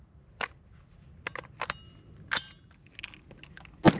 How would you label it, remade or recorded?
recorded